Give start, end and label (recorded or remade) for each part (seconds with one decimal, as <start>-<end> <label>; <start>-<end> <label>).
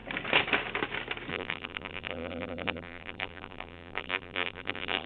0.0-1.3 recorded; 1.3-5.1 remade